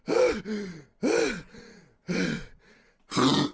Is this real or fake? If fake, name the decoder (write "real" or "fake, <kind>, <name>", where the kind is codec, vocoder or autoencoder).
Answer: real